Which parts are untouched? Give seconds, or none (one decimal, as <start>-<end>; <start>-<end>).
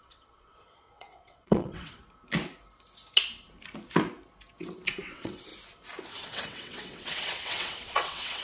2.0-4.9; 5.5-6.1